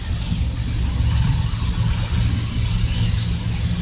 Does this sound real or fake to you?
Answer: real